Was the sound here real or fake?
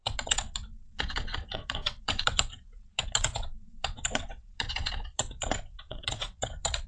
fake